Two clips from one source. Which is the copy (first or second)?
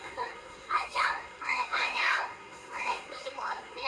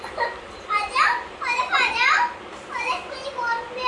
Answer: first